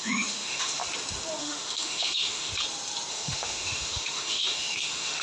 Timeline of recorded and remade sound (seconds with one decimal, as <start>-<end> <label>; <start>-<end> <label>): 0.0-0.8 remade; 0.8-1.4 recorded; 1.4-2.5 remade; 2.5-3.1 recorded; 3.1-5.2 remade